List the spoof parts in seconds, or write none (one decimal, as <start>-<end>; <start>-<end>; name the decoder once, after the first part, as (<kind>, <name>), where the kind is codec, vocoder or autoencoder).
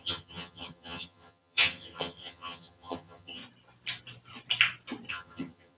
0.0-3.4 (vocoder, HiFi-GAN); 5.1-5.8